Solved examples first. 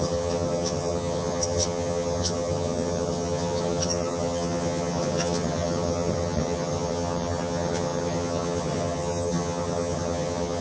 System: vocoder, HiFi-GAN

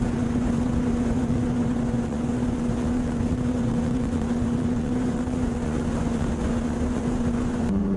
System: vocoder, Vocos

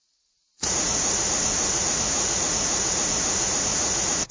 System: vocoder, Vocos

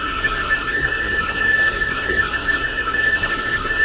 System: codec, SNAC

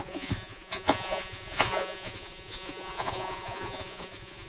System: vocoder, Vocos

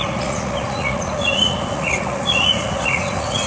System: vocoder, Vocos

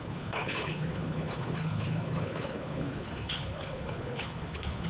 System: codec, HILCodec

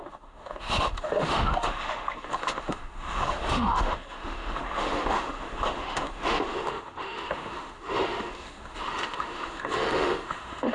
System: autoencoder, DAC-VAE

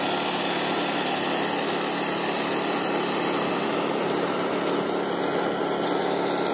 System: none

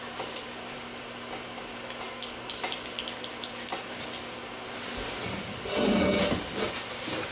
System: none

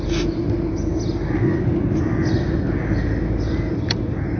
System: none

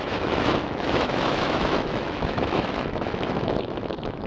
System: autoencoder, DAC-VAE